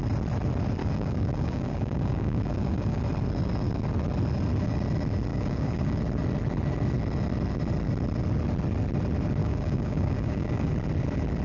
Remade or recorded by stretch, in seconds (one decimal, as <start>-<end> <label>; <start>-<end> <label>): 0.0-0.8 recorded; 0.8-3.0 remade; 3.0-5.3 recorded; 5.3-6.0 remade; 6.0-9.4 recorded; 9.4-10.7 remade; 10.7-11.4 recorded